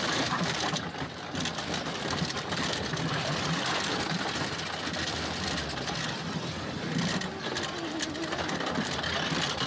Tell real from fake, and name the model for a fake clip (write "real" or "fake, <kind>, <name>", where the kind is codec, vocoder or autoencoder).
real